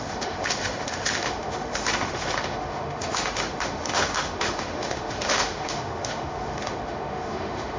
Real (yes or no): no